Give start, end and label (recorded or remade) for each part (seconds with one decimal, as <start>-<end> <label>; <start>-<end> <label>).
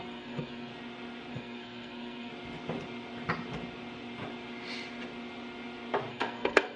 0.0-0.7 remade; 0.7-1.3 recorded; 1.3-2.3 remade; 2.3-6.1 recorded; 6.1-6.8 remade